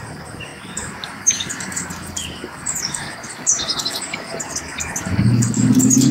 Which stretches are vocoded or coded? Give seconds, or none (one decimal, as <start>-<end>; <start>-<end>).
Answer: 0.0-6.1